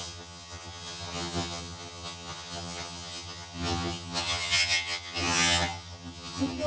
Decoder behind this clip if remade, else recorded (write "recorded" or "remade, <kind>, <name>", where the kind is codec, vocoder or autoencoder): remade, vocoder, HiFi-GAN